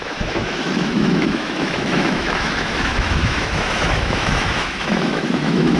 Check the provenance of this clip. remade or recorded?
remade